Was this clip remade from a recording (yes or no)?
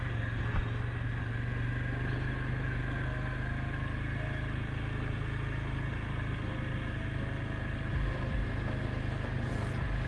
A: no